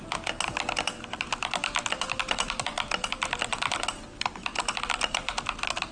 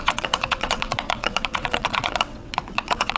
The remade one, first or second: second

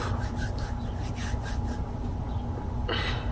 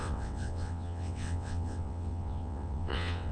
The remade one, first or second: second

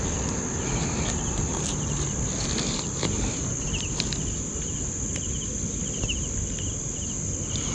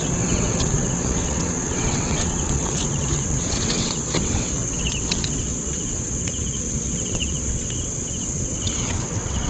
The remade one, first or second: second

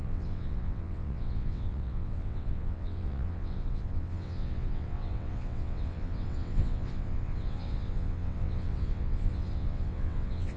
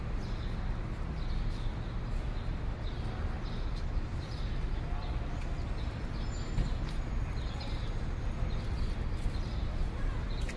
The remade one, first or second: first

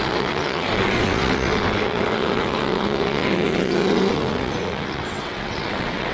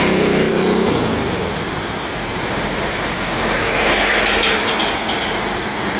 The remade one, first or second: first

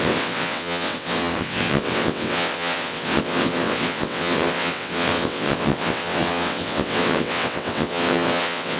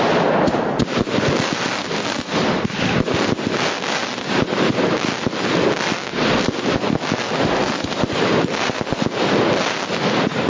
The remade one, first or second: first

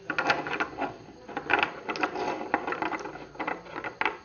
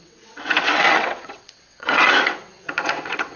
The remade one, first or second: second